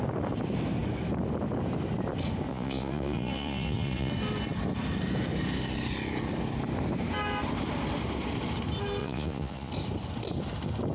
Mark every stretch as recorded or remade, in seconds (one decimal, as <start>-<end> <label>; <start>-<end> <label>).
0.0-2.5 recorded; 2.5-4.1 remade; 4.1-9.0 recorded; 9.0-9.7 remade; 9.7-10.9 recorded